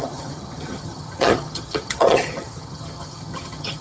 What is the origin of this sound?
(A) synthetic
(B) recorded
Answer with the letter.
A